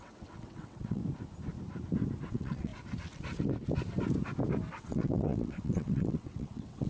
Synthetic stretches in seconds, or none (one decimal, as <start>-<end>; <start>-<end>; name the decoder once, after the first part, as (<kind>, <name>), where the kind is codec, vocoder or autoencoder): 0.0-1.0 (vocoder, WaveNeXt); 2.3-2.7; 4.7-6.9